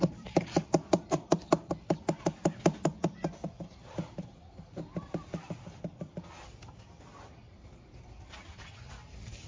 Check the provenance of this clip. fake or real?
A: fake